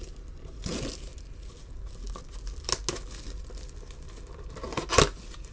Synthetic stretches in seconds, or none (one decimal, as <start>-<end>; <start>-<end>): none